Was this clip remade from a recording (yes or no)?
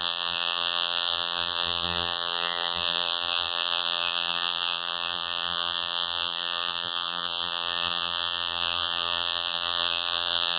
yes